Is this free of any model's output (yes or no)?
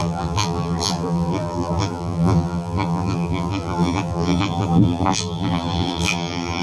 no